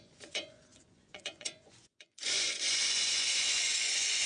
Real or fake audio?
fake